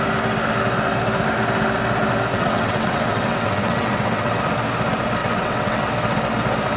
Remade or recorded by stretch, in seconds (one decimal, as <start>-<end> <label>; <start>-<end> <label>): 0.0-2.3 recorded; 2.3-4.4 remade; 4.4-5.2 recorded; 5.2-5.8 remade; 5.8-6.8 recorded